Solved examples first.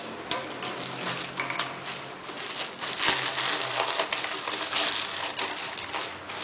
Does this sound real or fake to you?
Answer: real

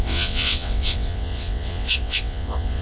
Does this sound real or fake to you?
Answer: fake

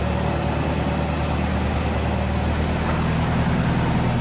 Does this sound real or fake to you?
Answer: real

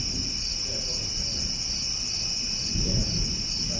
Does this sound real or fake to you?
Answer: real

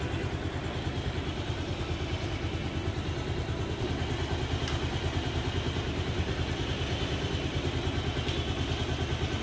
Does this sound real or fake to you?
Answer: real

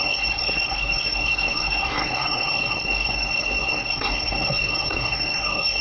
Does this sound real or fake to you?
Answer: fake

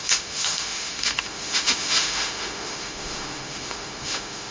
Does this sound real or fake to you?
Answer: fake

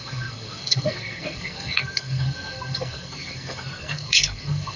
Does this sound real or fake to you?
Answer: fake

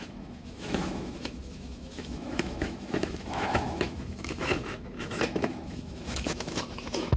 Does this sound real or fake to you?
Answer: fake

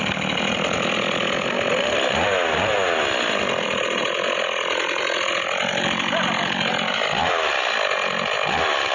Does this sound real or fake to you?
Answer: real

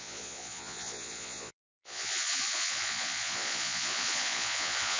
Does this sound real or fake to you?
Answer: fake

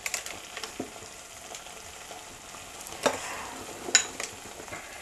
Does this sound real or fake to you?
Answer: real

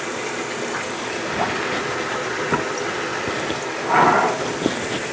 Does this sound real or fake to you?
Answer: real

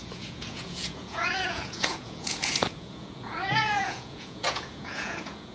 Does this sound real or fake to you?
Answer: fake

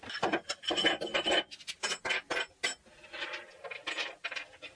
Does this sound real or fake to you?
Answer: real